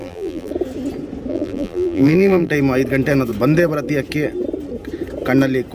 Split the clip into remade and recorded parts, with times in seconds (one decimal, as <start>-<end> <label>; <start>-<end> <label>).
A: 0.0-0.5 remade; 0.5-1.3 recorded; 1.3-2.5 remade; 2.5-5.7 recorded